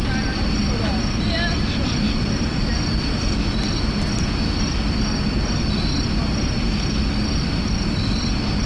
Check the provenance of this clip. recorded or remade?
recorded